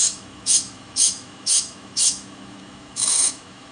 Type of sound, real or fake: fake